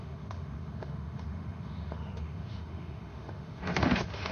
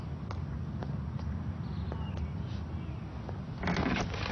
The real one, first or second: second